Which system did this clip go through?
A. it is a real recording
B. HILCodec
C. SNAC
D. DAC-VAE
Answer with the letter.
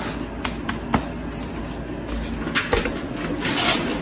A